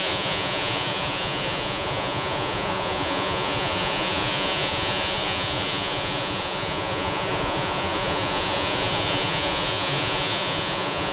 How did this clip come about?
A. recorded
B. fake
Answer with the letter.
B